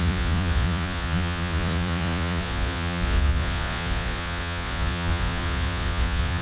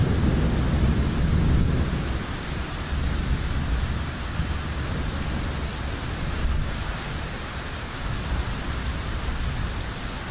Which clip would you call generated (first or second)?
first